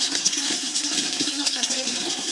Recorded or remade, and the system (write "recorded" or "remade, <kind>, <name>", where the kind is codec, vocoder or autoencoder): remade, codec, SNAC